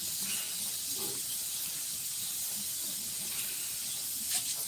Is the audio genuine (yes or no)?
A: yes